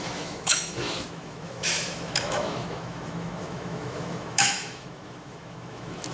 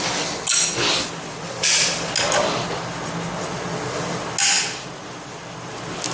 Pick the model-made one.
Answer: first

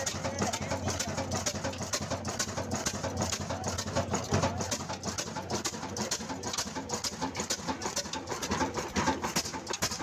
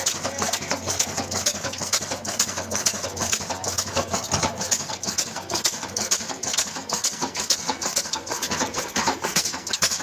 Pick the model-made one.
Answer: second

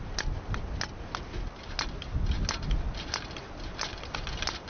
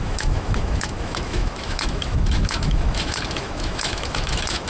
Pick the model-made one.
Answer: second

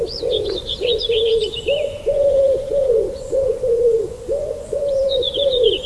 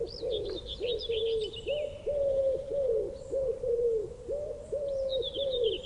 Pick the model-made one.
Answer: first